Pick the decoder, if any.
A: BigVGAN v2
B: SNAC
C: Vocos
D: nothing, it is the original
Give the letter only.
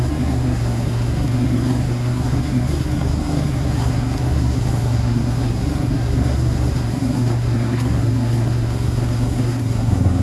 B